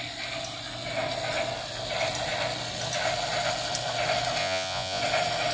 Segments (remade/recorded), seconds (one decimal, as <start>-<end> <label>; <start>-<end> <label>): 0.0-4.4 recorded; 4.4-5.0 remade; 5.0-5.5 recorded